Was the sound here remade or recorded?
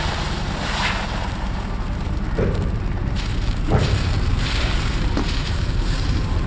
remade